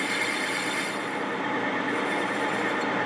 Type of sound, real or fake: real